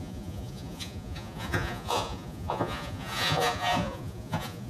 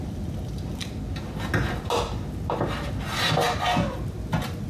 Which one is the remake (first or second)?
first